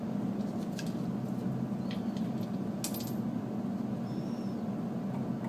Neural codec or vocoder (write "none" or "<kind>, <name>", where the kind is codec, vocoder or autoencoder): none